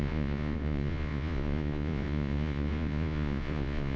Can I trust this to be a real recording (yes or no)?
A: no